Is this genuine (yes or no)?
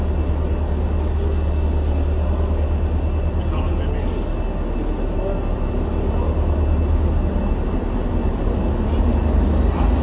yes